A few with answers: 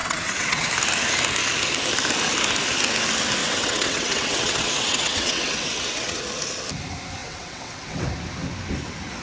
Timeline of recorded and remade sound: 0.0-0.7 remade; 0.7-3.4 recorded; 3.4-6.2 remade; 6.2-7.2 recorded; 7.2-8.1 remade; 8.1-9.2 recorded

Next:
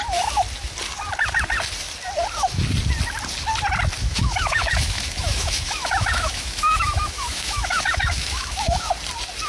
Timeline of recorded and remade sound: 0.0-4.0 recorded; 4.0-8.9 remade; 8.9-9.5 recorded

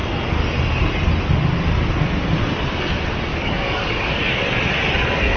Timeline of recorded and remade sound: 0.0-3.3 recorded; 3.3-4.2 remade; 4.2-5.4 recorded

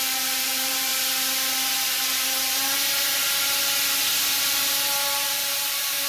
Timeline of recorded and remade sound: 0.0-0.9 remade; 0.9-4.4 recorded; 4.4-6.1 remade